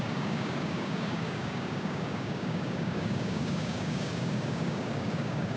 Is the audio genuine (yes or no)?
no